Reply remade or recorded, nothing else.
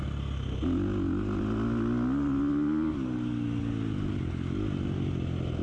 recorded